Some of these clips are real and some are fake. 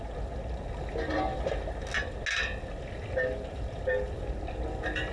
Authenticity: real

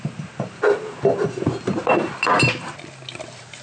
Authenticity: real